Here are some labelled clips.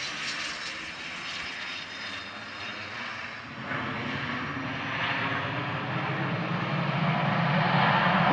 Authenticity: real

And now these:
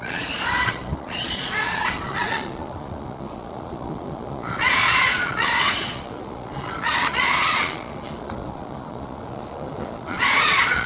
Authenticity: fake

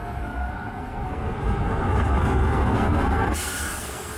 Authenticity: fake